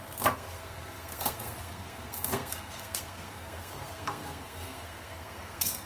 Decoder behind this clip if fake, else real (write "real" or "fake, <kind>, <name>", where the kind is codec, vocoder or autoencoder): fake, codec, SNAC